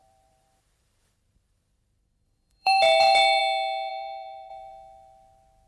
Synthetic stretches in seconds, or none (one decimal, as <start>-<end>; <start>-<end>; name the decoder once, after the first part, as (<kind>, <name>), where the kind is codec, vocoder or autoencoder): 0.0-3.4 (vocoder, BigVGAN v2); 3.9-4.7